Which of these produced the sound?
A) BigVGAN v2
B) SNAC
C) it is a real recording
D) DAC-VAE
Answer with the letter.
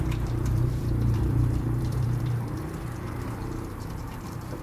A